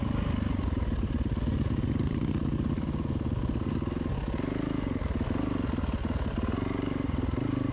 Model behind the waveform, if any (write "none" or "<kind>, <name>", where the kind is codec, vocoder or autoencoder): none